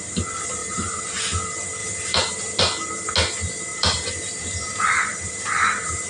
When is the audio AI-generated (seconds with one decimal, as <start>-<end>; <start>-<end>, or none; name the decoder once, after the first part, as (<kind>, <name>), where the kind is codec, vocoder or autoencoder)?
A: 0.6-1.2 (vocoder, BigVGAN v2); 1.8-2.6; 3.7-6.1